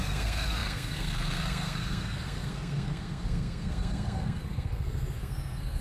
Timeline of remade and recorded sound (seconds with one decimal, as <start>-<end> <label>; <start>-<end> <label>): 0.0-5.8 remade